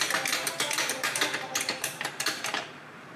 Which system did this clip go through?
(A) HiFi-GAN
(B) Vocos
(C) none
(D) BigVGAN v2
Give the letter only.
D